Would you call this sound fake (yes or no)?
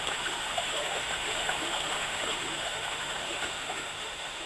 yes